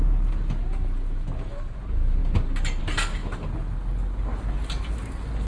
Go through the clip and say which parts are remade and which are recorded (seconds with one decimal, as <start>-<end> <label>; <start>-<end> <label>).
0.0-5.5 recorded